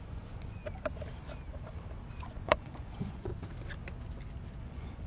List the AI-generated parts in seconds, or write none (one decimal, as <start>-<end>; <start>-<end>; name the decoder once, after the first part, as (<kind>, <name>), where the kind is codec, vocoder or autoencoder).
0.0-0.6 (vocoder, Vocos); 2.2-3.3; 4.6-5.1